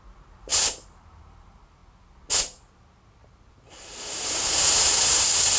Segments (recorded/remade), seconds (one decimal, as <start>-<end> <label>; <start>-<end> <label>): 0.0-1.8 remade; 1.8-3.5 recorded; 3.5-5.6 remade